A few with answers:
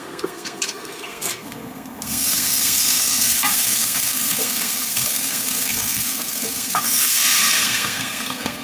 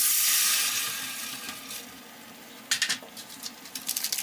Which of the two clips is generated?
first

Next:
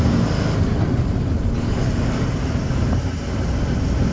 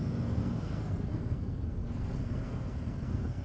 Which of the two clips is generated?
second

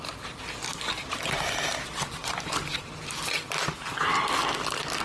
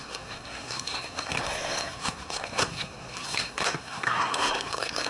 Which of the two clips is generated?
second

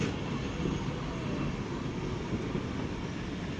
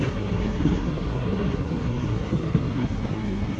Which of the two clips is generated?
second